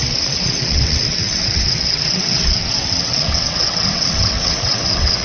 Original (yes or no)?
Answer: no